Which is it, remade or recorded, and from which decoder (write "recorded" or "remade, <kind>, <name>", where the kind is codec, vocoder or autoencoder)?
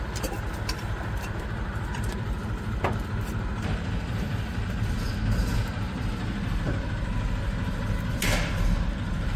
remade, vocoder, BigVGAN v2